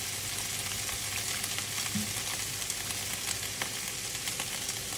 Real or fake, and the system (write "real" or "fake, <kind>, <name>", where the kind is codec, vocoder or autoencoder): real